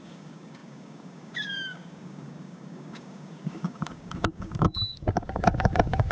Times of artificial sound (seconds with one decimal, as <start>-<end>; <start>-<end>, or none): 0.0-6.1